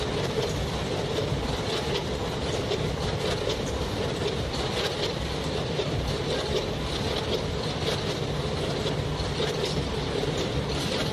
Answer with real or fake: fake